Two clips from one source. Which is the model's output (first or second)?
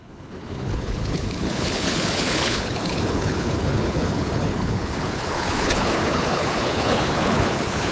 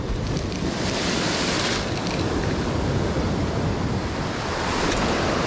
first